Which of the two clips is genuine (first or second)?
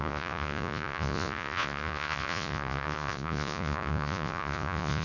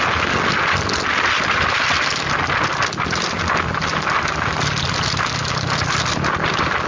second